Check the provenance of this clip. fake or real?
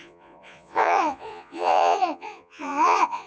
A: fake